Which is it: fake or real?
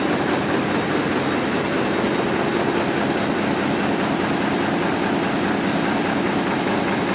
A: real